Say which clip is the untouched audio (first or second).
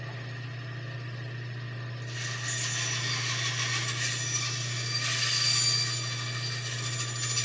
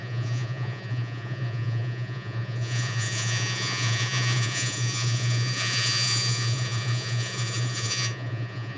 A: first